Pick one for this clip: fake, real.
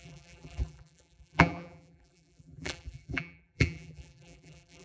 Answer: fake